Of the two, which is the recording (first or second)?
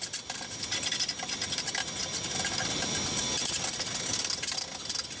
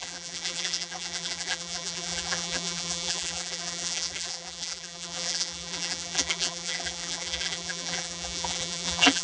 first